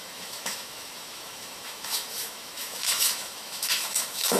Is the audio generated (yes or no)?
yes